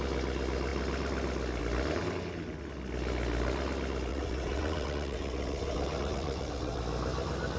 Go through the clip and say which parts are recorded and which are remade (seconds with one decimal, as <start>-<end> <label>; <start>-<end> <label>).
0.0-4.1 recorded; 4.1-6.8 remade; 6.8-7.6 recorded